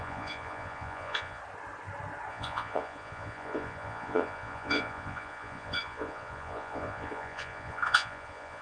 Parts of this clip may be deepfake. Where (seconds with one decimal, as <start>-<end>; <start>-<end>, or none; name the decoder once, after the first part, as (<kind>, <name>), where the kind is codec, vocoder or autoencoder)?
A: 0.0-1.4 (vocoder, Vocos); 2.3-8.6